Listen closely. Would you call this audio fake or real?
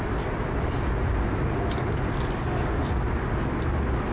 real